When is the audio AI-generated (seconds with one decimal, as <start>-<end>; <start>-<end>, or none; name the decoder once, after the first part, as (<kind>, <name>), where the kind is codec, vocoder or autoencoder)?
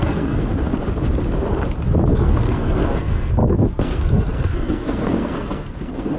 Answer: 0.0-0.5 (codec, SNAC); 2.1-6.2